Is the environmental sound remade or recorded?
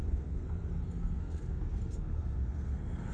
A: remade